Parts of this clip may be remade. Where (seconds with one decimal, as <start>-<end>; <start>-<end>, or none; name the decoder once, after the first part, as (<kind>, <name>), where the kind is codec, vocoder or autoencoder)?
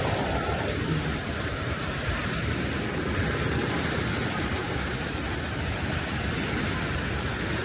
0.0-4.6 (vocoder, BigVGAN v2)